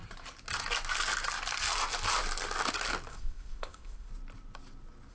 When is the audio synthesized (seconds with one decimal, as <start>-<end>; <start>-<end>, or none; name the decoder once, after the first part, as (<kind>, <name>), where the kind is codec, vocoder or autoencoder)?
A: 3.1-4.1 (codec, ZipCodec)